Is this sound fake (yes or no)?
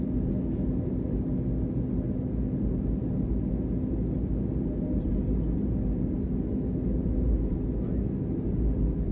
no